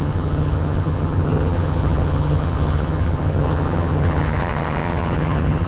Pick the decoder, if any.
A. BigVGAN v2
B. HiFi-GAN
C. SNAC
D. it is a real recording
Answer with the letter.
B